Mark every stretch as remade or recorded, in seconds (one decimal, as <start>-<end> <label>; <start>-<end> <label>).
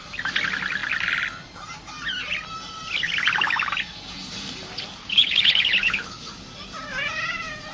0.0-5.0 recorded; 5.0-6.3 remade; 6.3-7.7 recorded